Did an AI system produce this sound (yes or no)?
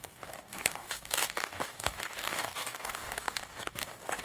yes